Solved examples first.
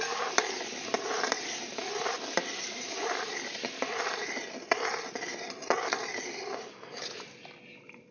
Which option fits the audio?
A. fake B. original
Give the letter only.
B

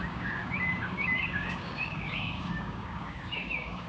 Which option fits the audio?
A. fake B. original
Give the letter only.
A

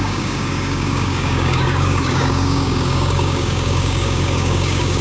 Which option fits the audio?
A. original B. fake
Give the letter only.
B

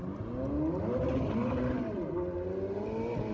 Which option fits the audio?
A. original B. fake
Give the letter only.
A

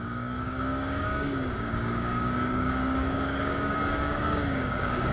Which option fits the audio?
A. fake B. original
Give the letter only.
A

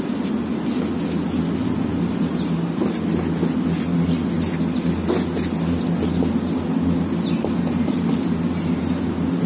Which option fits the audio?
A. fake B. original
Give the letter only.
B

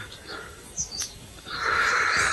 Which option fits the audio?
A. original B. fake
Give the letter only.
B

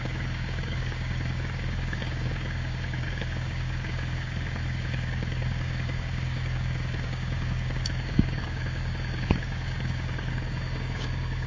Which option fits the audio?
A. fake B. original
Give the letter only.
A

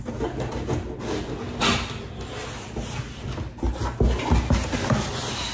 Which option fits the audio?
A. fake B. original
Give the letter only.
B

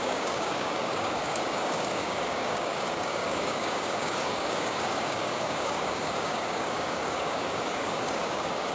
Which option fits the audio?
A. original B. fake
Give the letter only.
B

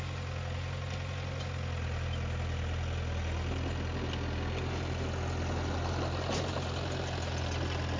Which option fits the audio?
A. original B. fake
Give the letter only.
A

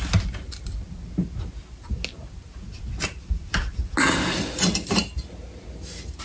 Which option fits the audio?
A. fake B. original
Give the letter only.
B